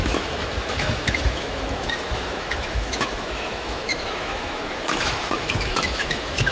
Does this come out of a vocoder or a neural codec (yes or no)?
yes